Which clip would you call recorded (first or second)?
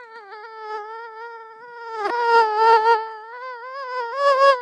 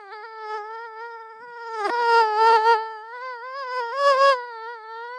first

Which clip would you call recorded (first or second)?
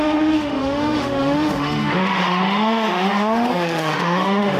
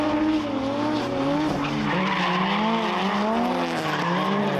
second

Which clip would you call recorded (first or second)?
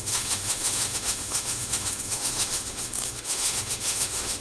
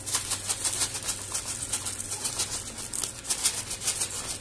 second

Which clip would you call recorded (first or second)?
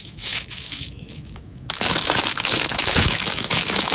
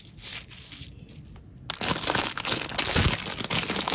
second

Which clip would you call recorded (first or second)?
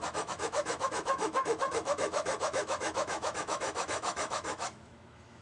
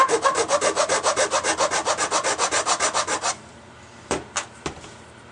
second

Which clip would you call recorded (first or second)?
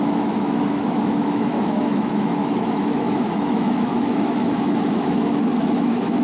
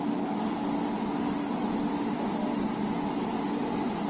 second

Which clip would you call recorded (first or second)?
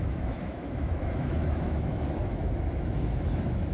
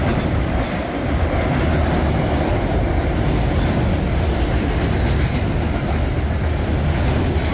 second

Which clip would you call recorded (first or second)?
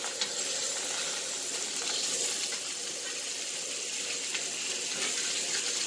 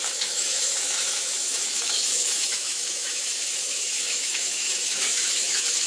first